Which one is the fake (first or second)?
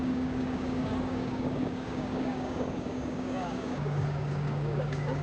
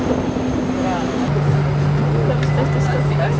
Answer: first